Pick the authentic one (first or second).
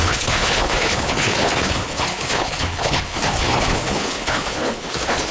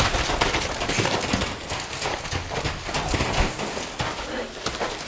second